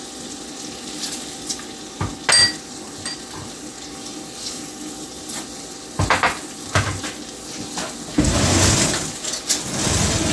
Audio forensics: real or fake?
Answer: real